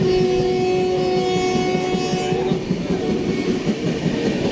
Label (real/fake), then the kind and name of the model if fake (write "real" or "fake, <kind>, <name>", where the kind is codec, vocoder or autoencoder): real